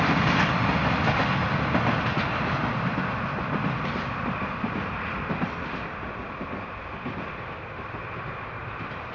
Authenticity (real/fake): real